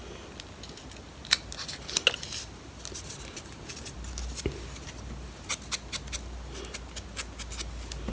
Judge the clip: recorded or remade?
recorded